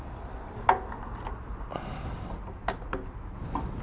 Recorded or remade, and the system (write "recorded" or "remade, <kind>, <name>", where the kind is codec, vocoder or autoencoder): recorded